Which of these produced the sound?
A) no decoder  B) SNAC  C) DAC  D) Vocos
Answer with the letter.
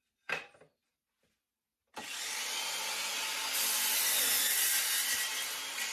A